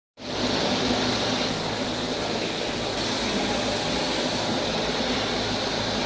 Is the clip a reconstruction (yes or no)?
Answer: no